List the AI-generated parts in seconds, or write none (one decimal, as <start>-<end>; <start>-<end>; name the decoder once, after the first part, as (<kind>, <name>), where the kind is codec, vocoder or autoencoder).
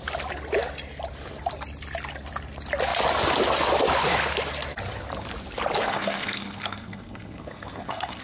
5.8-8.2 (codec, SNAC)